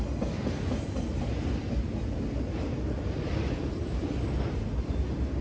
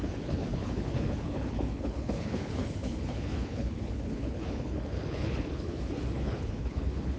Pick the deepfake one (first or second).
second